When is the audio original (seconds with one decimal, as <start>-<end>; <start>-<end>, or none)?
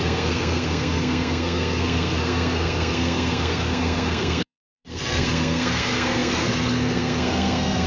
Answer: none